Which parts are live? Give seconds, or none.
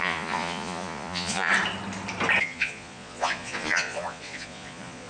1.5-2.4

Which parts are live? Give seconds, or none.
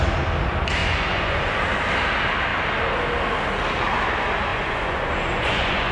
0.0-0.8; 1.6-4.5